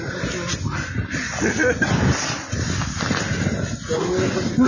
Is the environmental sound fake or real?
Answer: real